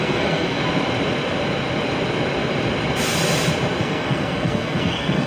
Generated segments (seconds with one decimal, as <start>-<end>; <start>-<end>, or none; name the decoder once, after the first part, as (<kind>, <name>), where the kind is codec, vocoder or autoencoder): 0.0-0.6 (codec, SNAC); 3.8-5.3